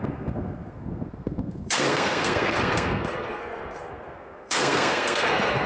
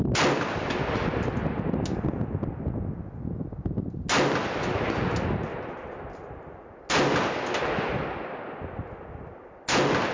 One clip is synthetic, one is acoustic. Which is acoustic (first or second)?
second